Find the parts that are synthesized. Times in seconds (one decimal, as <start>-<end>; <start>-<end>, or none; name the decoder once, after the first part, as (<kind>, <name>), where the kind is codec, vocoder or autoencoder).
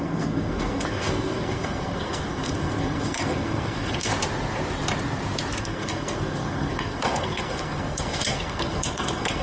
0.0-4.1 (codec, SNAC); 5.6-9.4